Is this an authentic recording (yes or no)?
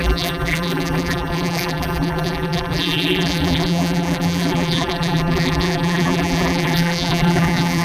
no